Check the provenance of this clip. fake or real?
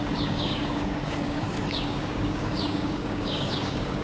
fake